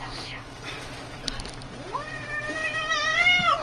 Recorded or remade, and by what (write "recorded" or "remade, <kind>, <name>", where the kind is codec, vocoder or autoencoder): remade, vocoder, BigVGAN v2